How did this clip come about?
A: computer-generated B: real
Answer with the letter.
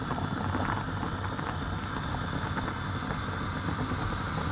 B